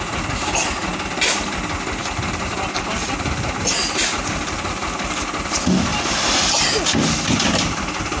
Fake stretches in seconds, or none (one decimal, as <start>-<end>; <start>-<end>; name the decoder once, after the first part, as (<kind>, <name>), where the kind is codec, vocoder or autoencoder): none